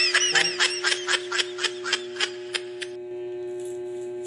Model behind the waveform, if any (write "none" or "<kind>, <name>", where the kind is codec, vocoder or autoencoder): none